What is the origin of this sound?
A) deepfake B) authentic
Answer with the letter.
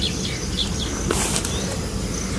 B